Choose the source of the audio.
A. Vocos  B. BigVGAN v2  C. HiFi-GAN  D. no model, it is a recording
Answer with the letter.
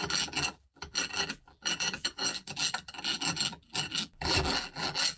B